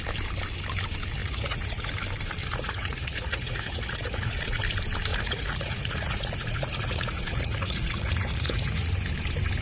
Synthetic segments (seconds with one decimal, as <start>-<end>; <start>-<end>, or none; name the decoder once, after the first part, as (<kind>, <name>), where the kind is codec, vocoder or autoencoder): 1.2-1.9 (vocoder, Vocos); 2.4-4.6; 5.1-8.9

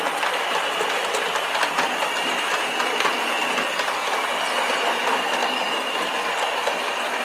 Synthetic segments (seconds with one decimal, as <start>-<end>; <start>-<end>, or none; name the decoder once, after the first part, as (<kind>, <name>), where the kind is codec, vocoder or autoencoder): 5.4-6.0 (vocoder, BigVGAN v2)

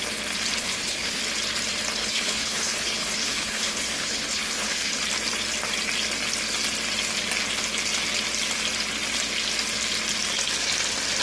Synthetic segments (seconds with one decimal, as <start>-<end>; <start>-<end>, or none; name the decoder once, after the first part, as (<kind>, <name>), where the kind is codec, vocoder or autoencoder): 0.6-1.2 (codec, HILCodec); 2.0-5.0

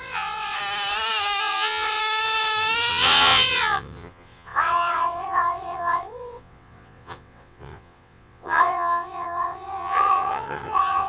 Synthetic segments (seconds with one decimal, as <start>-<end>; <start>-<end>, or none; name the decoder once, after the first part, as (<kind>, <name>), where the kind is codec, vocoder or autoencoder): 0.0-0.6 (vocoder, WaveNeXt); 1.4-2.0; 2.9-11.1

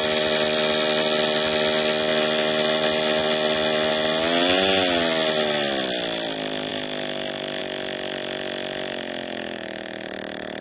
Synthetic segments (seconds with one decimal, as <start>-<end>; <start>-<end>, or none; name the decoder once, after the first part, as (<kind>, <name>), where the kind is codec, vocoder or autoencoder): none

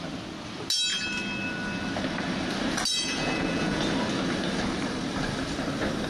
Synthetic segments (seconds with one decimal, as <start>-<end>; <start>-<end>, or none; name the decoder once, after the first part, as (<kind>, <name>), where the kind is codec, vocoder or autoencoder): 2.9-3.8 (vocoder, Vocos)

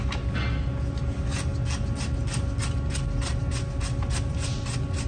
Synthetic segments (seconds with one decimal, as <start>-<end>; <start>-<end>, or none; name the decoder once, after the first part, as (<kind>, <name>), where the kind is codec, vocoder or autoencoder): none

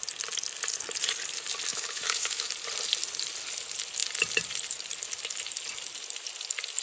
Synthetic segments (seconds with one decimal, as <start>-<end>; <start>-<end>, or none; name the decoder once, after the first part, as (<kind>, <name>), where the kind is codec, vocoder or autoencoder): 1.7-2.5 (autoencoder, DAC-VAE)